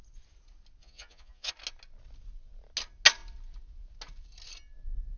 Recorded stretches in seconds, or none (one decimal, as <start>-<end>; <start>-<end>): 0.0-0.8; 1.5-5.2